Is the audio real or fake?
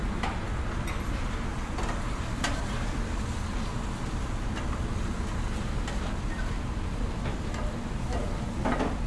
real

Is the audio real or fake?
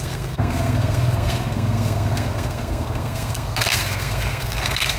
fake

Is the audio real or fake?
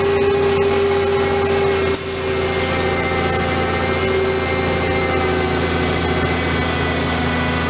real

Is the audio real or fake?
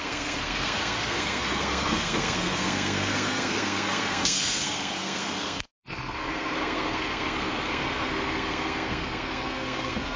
fake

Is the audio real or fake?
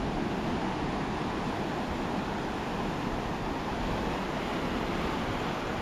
real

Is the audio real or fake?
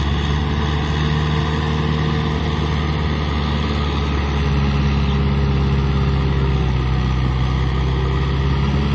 real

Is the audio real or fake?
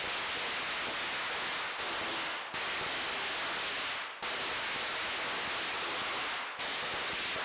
real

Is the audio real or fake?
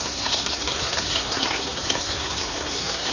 fake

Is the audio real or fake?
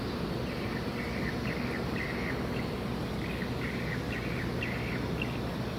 real